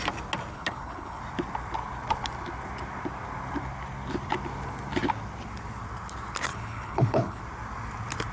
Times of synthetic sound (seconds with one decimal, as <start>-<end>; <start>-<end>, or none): 0.5-1.2; 6.5-7.4